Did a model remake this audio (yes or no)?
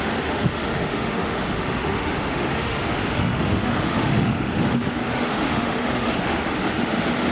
yes